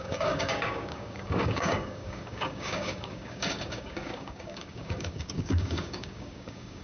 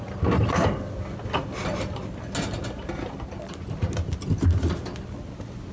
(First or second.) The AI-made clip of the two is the first